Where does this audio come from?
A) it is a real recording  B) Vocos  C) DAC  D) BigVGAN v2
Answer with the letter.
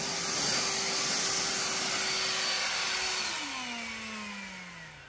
A